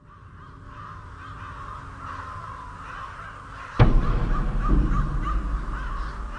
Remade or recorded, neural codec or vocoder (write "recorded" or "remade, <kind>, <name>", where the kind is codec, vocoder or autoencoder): recorded